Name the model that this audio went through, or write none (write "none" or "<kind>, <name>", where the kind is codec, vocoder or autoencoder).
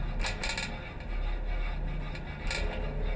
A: none